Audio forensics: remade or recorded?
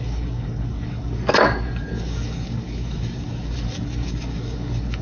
remade